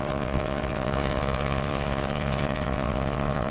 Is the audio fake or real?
fake